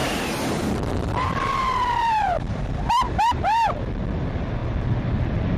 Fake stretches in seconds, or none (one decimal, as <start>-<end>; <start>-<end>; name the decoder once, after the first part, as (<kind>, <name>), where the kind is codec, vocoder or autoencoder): 0.0-3.4 (vocoder, BigVGAN v2)